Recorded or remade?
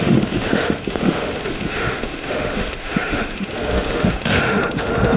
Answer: remade